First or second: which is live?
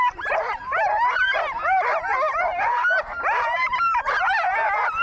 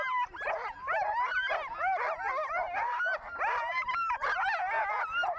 second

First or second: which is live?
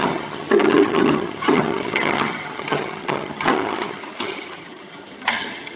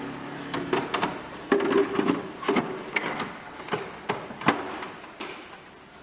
second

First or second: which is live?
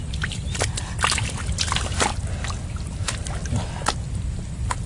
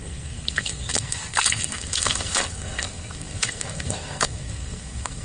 first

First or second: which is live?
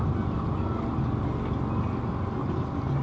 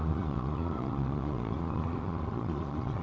first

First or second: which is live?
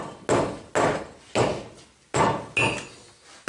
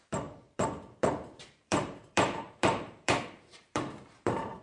first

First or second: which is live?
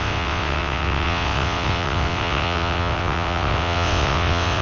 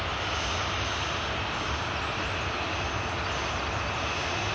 second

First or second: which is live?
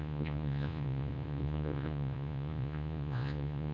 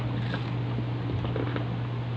second